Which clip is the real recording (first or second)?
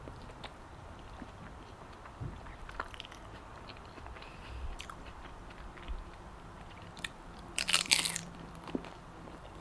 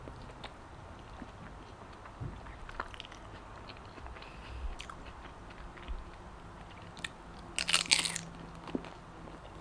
second